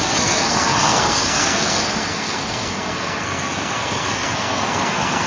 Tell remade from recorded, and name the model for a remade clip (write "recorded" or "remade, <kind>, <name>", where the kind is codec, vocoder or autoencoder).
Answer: remade, codec, SNAC